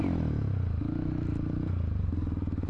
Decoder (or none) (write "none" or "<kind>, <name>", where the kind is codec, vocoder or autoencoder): none